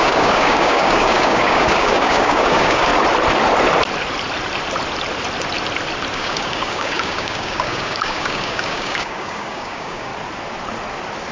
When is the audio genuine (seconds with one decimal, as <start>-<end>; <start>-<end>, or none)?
2.9-6.1; 10.1-11.3